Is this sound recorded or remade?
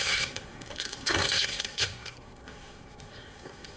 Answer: remade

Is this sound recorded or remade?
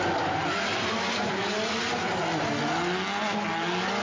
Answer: recorded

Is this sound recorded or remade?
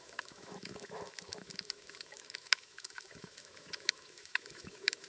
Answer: remade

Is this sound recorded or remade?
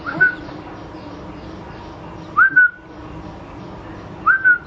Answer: recorded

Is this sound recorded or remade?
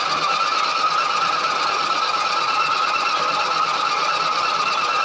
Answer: recorded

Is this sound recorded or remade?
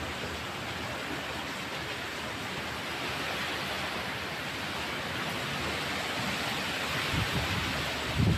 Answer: recorded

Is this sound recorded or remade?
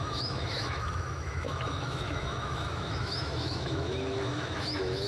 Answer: remade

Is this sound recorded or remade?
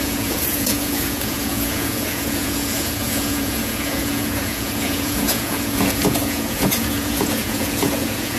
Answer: remade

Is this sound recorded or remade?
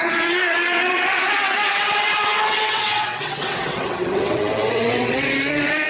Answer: remade